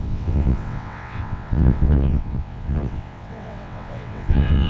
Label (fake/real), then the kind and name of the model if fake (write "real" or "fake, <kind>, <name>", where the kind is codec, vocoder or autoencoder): fake, vocoder, WaveNeXt